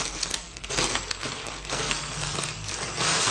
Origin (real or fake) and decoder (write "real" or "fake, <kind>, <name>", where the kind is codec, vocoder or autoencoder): fake, codec, SNAC